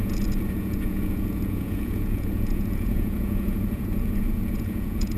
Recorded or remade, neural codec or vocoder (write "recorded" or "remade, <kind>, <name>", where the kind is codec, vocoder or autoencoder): remade, vocoder, Vocos